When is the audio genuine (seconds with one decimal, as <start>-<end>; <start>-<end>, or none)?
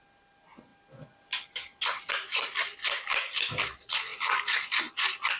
0.0-5.4